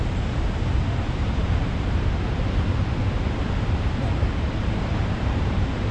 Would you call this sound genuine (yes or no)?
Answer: no